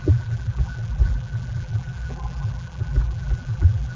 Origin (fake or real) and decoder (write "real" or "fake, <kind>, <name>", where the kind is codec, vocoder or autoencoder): fake, vocoder, BigVGAN v2